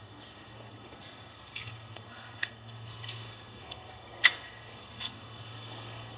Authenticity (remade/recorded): remade